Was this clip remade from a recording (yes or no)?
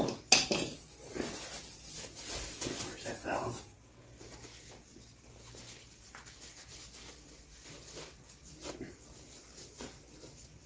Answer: no